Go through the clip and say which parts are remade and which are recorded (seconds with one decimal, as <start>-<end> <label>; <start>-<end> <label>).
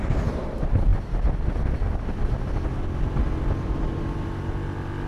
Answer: 0.0-5.1 recorded